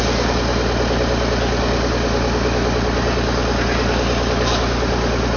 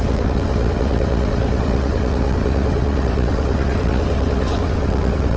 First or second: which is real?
first